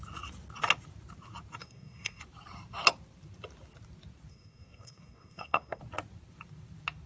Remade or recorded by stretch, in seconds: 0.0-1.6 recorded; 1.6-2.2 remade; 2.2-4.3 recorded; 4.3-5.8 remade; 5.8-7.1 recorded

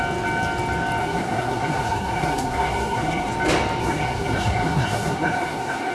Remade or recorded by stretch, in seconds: 0.0-1.0 recorded; 1.0-3.3 remade; 3.3-3.8 recorded; 3.8-5.9 remade

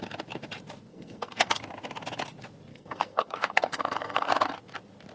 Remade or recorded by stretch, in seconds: 0.0-0.9 recorded; 0.9-1.6 remade; 1.6-2.7 recorded; 2.7-4.3 remade; 4.3-5.1 recorded

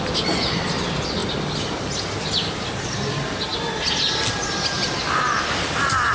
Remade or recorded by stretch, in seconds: 0.0-6.1 recorded

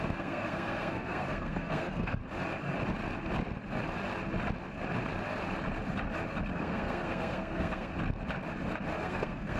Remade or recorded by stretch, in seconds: 0.0-2.2 remade; 2.2-6.5 recorded; 6.5-7.9 remade; 7.9-9.0 recorded; 9.0-9.6 remade

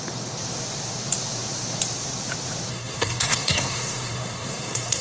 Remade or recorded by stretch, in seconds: 0.0-2.7 recorded; 2.7-5.0 remade

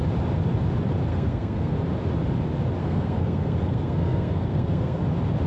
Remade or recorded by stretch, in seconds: 0.0-1.1 recorded; 1.1-1.7 remade; 1.7-2.8 recorded; 2.8-5.0 remade; 5.0-5.5 recorded